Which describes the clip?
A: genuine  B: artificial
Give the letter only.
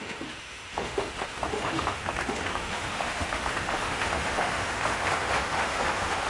B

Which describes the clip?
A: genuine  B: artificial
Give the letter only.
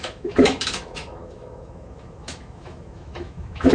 B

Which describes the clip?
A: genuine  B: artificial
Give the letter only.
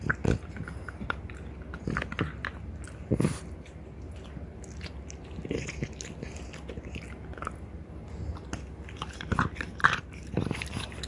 A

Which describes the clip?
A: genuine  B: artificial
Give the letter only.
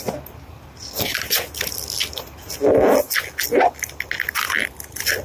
A